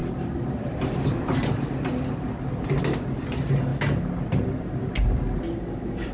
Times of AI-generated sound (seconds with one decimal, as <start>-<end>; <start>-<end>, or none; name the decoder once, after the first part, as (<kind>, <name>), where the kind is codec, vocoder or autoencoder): none